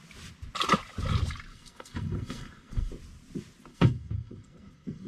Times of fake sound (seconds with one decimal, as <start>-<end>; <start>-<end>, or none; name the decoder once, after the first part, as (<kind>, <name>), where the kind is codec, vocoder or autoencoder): 1.5-2.9 (codec, SNAC); 3.7-5.1